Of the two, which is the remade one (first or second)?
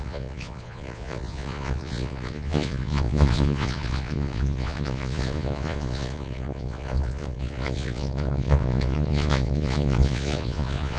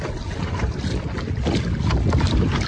first